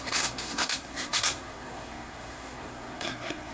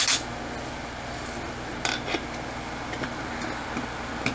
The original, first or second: second